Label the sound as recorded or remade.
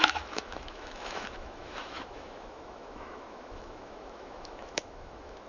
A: remade